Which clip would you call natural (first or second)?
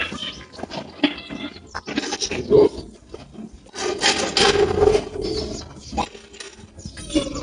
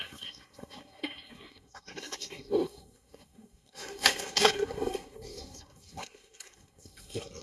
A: first